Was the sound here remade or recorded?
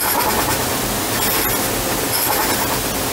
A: recorded